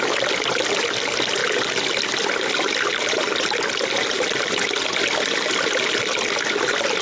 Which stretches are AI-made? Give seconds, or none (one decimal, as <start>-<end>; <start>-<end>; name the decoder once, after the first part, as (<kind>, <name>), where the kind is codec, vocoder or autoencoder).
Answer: none